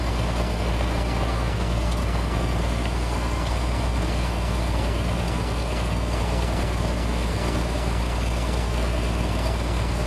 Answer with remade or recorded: remade